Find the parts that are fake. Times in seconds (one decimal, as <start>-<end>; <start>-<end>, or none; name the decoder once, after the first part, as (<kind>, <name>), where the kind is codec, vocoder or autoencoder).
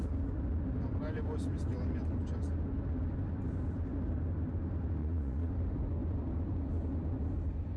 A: 5.0-5.5 (vocoder, Vocos)